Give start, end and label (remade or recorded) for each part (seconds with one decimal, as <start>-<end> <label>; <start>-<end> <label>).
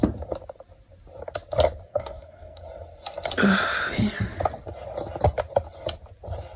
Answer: 0.0-1.9 recorded; 1.9-2.6 remade; 2.6-6.6 recorded